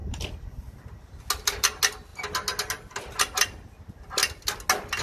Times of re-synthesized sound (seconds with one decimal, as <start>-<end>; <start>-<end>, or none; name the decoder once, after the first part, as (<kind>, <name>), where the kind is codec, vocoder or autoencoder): 0.0-0.7 (vocoder, BigVGAN v2)